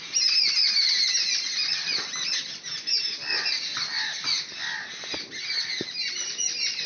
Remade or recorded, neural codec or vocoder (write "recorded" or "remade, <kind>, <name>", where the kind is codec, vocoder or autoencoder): recorded